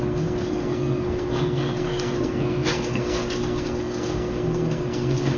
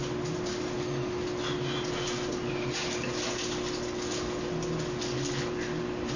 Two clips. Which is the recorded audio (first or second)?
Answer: second